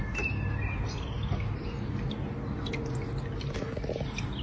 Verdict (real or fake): real